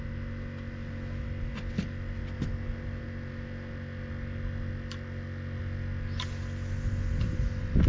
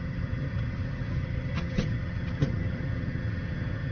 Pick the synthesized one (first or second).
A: second